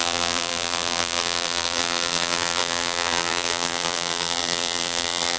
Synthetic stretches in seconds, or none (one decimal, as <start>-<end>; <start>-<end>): 0.0-5.4